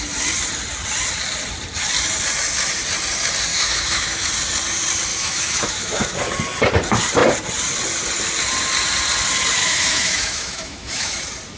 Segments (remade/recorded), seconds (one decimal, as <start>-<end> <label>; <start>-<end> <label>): 0.0-3.5 recorded; 3.5-4.3 remade; 4.3-5.1 recorded; 5.1-6.2 remade; 6.2-9.6 recorded; 9.6-11.2 remade; 11.2-11.6 recorded